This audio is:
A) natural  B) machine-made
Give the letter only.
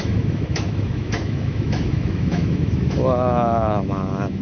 B